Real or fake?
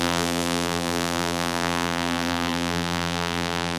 fake